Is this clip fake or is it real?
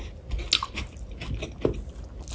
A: real